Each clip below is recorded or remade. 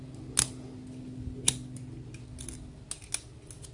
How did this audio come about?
recorded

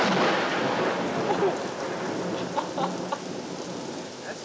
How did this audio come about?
recorded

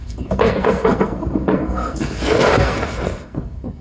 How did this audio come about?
remade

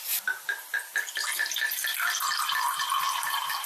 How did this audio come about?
recorded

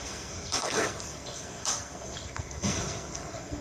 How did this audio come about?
remade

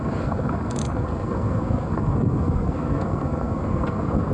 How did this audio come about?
remade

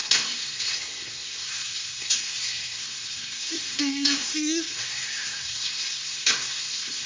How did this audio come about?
remade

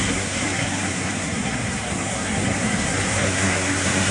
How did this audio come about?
remade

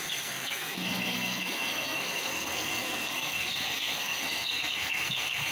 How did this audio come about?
remade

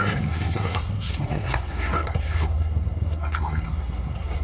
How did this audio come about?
remade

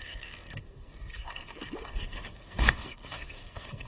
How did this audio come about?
remade